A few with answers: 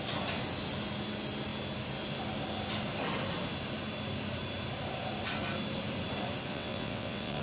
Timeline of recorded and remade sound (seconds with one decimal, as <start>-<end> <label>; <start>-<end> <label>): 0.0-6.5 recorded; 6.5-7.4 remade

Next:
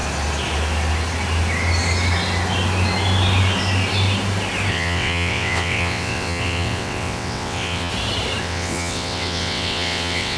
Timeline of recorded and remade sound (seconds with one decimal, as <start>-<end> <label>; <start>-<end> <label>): 0.0-4.7 recorded; 4.7-7.9 remade; 7.9-8.4 recorded; 8.4-10.4 remade

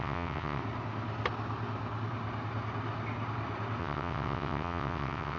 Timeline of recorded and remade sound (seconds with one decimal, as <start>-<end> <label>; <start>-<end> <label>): 0.0-0.6 remade; 0.6-3.8 recorded; 3.8-5.4 remade

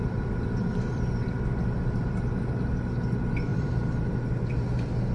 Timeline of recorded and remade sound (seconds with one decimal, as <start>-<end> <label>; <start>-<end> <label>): 0.0-2.2 remade; 2.2-3.5 recorded; 3.5-4.1 remade; 4.1-5.1 recorded

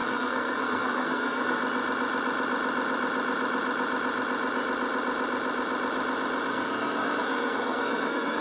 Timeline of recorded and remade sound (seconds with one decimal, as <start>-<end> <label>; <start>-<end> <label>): 0.0-1.6 remade; 1.6-6.5 recorded; 6.5-8.4 remade

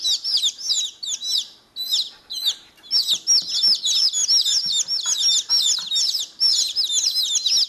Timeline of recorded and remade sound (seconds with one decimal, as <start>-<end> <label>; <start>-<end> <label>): 0.0-7.7 recorded

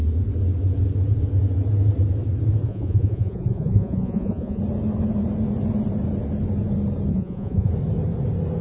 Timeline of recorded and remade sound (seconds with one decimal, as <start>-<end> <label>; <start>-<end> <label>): 0.0-2.7 recorded; 2.7-4.6 remade; 4.6-7.1 recorded; 7.1-7.7 remade; 7.7-8.6 recorded